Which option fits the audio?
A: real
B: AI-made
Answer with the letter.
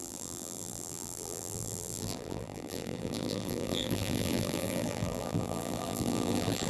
B